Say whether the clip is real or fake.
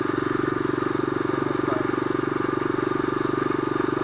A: real